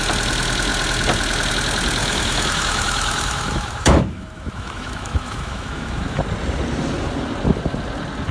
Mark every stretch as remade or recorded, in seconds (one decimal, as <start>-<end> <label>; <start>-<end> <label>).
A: 0.0-2.0 recorded; 2.0-6.2 remade; 6.2-8.3 recorded